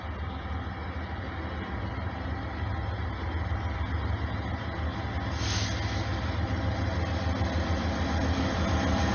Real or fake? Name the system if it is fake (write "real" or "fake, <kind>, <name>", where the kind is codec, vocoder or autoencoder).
real